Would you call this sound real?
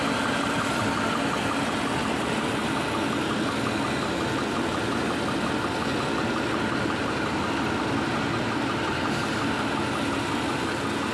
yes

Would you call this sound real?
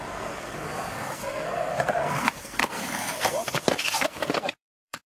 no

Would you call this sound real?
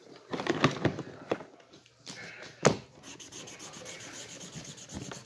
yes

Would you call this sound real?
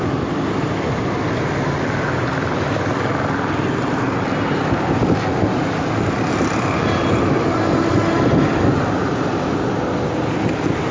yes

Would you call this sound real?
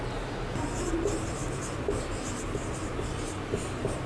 yes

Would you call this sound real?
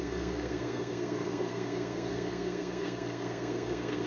no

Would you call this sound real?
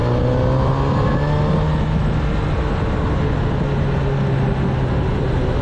yes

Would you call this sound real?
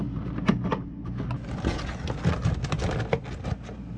yes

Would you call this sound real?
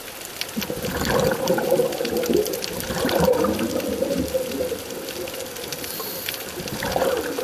yes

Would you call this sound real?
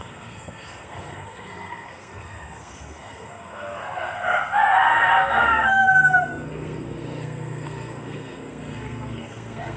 no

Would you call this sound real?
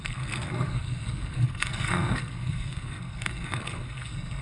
no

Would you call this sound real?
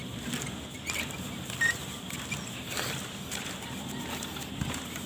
yes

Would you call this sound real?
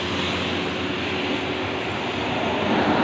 yes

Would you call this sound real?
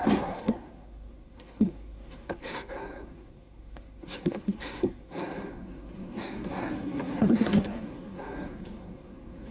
no